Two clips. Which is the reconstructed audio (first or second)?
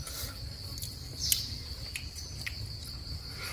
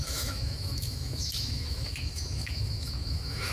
second